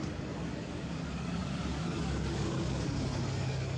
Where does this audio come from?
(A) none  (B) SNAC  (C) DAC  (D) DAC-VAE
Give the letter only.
C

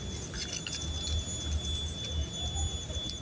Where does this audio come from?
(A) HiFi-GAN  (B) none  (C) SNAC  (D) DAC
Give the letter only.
B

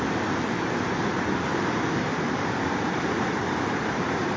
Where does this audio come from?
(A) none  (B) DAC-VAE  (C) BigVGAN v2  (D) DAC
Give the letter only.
A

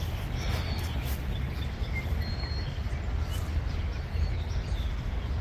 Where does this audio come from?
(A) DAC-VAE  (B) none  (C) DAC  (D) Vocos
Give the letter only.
B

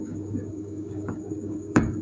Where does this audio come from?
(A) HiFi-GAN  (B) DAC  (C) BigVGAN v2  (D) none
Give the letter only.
B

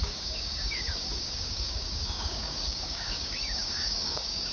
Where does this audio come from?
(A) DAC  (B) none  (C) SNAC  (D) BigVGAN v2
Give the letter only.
A